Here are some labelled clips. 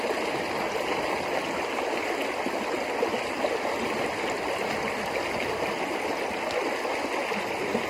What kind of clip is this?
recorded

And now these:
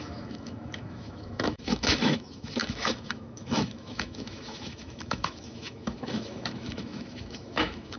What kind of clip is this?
remade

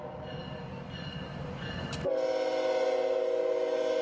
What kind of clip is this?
recorded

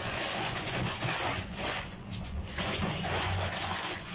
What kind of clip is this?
remade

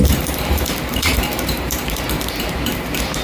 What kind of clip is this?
remade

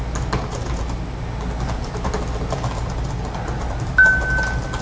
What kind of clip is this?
recorded